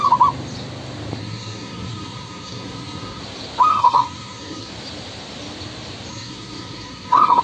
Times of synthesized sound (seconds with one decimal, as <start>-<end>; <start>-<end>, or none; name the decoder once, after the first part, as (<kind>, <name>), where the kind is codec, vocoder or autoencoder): 1.2-3.2 (codec, SNAC); 3.7-4.7; 6.1-7.4